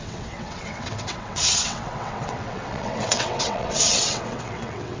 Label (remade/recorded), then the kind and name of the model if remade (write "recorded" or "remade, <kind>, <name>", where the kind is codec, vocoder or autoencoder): remade, vocoder, WaveNeXt